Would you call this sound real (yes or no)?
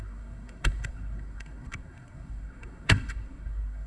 no